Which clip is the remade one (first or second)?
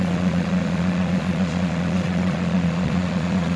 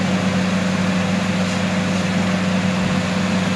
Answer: first